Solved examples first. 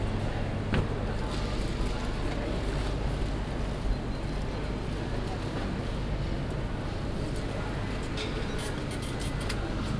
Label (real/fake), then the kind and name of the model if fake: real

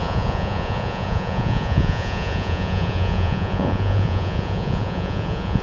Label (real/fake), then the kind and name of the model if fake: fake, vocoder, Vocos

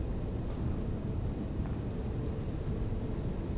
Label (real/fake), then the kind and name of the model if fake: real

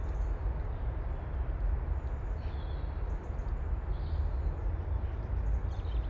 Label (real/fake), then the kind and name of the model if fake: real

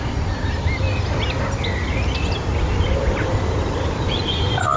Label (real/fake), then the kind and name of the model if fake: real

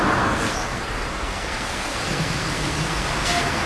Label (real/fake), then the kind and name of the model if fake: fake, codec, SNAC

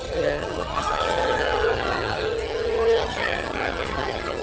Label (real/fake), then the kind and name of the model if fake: fake, vocoder, HiFi-GAN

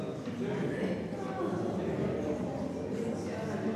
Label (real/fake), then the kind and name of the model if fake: real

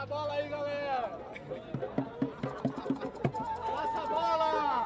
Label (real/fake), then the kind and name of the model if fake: real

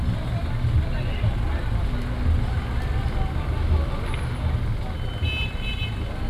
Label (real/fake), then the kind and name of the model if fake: real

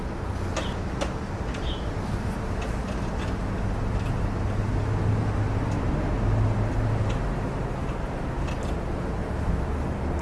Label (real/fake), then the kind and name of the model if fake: real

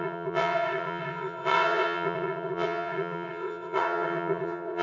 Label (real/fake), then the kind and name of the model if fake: fake, vocoder, WaveNeXt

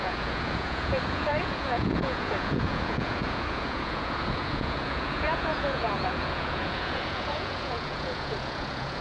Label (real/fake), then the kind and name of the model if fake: fake, vocoder, Vocos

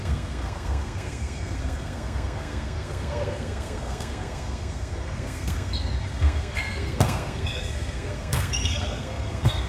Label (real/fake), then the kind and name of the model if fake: fake, codec, SNAC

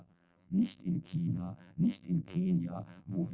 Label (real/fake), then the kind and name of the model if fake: fake, vocoder, BigVGAN v2